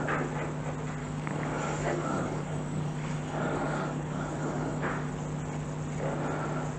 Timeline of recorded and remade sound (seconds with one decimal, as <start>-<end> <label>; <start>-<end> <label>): 0.0-1.0 recorded; 1.0-5.1 remade; 5.1-6.8 recorded